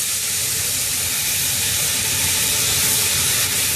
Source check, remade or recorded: recorded